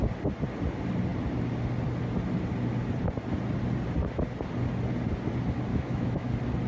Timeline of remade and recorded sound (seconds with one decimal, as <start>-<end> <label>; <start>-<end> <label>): 0.0-5.7 recorded; 5.7-6.3 remade; 6.3-6.7 recorded